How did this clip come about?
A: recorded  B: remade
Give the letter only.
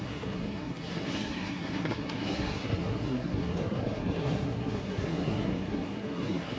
B